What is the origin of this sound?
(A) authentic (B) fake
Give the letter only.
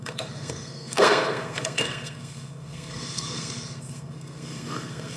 B